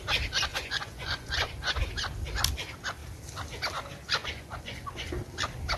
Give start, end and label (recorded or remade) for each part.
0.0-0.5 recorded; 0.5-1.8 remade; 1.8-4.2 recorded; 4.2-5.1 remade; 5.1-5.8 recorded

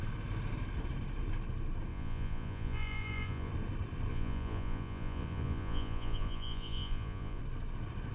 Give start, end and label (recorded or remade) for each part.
0.0-1.9 recorded; 1.9-3.5 remade; 3.5-4.1 recorded; 4.1-7.4 remade; 7.4-8.1 recorded